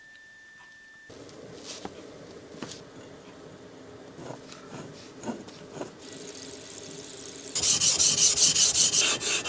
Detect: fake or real real